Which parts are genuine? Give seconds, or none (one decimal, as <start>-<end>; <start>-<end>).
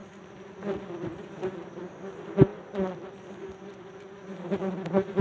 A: 1.8-2.5; 3.9-5.2